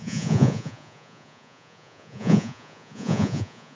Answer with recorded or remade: remade